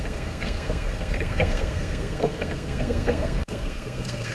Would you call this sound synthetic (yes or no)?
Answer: yes